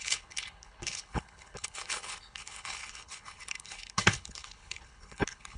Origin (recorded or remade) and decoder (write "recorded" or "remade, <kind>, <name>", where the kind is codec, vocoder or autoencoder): remade, codec, HILCodec